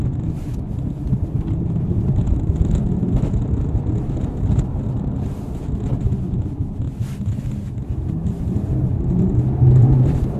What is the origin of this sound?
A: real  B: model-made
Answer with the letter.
A